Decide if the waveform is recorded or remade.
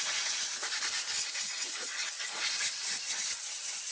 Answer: recorded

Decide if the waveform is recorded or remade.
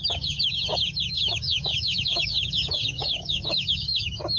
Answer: remade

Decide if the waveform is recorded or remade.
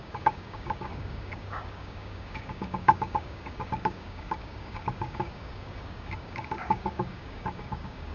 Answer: remade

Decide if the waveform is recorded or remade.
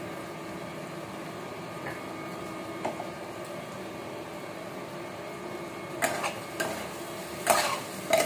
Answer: recorded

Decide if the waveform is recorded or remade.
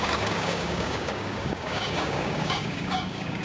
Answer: remade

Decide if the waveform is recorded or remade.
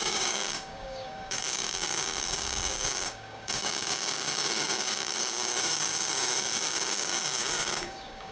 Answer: remade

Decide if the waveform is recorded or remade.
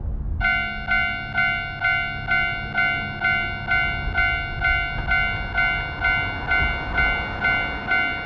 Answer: recorded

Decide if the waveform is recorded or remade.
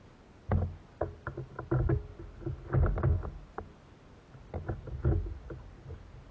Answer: recorded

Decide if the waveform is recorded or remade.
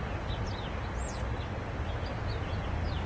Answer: recorded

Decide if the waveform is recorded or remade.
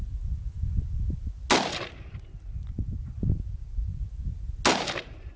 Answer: recorded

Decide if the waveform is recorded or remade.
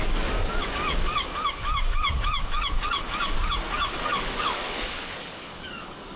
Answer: remade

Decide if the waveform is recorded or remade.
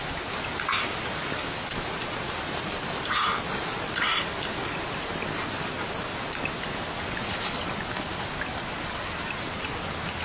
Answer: recorded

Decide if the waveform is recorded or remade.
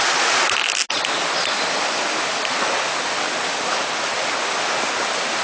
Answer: recorded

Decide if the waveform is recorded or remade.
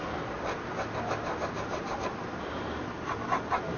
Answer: recorded